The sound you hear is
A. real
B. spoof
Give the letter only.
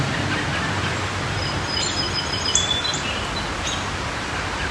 A